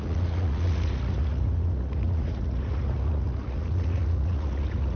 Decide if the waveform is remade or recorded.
remade